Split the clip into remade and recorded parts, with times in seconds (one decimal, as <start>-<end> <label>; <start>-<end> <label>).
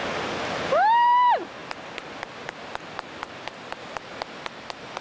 0.0-5.0 recorded